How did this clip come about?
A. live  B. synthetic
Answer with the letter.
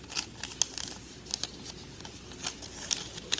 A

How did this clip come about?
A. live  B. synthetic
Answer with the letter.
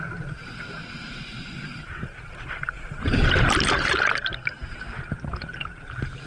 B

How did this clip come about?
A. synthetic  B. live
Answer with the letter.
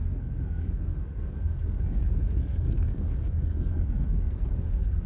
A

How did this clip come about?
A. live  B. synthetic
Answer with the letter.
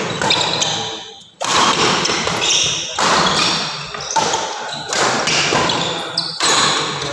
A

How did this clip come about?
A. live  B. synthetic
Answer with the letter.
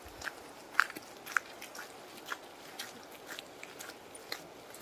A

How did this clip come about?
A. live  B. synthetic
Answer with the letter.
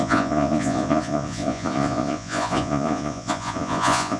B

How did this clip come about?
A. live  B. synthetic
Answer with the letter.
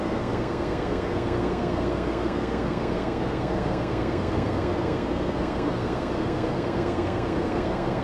B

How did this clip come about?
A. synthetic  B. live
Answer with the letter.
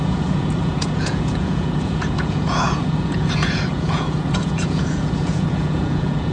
A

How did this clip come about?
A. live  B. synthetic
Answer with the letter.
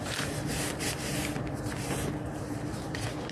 B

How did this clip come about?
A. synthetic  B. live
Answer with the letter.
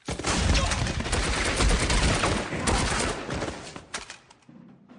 B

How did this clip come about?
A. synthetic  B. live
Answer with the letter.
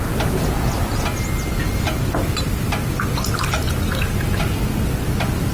B